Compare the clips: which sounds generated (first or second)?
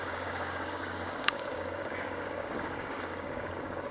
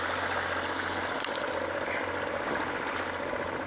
first